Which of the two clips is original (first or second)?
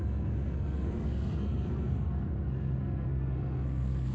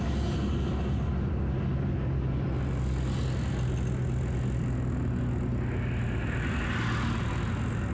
second